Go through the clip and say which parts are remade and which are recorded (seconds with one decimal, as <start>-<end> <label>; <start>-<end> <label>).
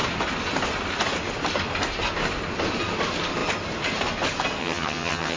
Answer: 0.0-4.6 recorded; 4.6-5.4 remade